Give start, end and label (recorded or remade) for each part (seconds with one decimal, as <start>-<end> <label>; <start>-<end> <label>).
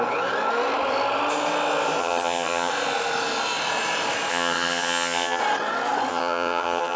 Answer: 0.0-2.0 recorded; 2.0-2.7 remade; 2.7-4.3 recorded; 4.3-5.4 remade; 5.4-6.1 recorded; 6.1-7.0 remade